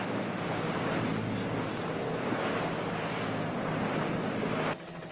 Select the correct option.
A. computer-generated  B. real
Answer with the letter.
B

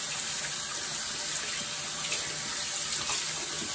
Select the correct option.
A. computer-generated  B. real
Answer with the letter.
B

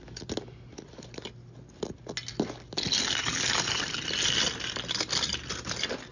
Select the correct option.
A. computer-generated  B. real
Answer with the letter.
B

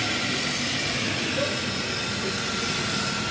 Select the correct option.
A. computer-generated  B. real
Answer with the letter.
B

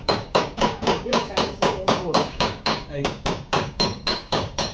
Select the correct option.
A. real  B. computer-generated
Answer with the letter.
B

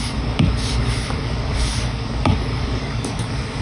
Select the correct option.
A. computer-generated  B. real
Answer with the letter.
A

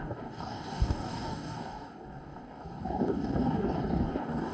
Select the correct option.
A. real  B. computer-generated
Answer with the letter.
B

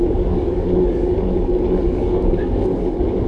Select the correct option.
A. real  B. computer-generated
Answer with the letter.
B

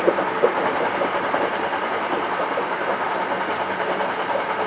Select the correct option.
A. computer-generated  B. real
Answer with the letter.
B